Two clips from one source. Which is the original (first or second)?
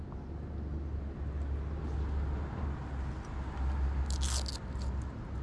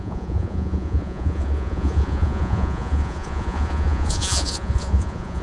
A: first